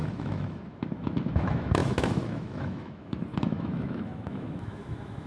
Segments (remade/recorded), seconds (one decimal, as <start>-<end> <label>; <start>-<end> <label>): 0.0-5.3 remade